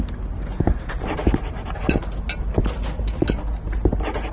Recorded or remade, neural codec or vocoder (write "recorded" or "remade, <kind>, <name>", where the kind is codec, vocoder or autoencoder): recorded